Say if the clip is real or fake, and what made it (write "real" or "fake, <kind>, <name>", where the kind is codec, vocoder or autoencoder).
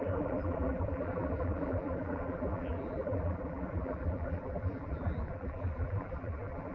fake, vocoder, BigVGAN v2